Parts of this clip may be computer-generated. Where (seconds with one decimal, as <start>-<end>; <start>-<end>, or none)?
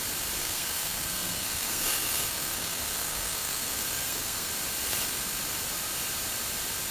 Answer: 0.4-4.5